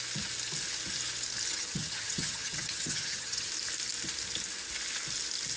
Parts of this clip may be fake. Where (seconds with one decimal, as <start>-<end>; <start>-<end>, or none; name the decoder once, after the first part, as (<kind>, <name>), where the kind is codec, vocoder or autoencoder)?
1.5-3.5 (vocoder, HiFi-GAN)